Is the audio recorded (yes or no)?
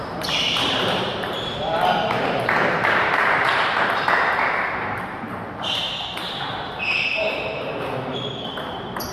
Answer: no